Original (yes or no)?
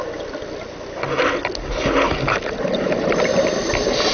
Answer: yes